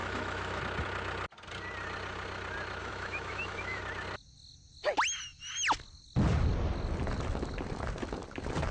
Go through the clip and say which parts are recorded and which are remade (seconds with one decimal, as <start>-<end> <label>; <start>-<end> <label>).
0.0-0.6 remade; 0.6-2.8 recorded; 2.8-3.8 remade; 3.8-8.7 recorded